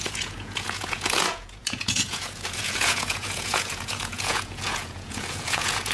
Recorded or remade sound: remade